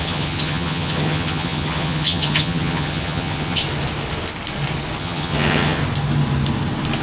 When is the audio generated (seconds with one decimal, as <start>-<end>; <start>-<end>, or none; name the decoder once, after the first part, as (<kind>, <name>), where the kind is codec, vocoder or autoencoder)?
0.0-3.6 (vocoder, HiFi-GAN); 5.0-5.8